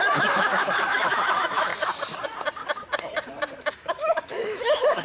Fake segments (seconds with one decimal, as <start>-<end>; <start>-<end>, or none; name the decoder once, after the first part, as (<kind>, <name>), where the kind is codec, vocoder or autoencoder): 0.0-1.7 (autoencoder, DAC-VAE); 3.7-5.0